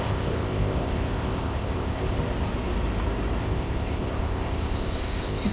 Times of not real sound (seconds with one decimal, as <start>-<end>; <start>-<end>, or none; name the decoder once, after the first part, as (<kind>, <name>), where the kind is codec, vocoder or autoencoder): 0.0-2.2 (codec, ZipCodec); 3.4-5.5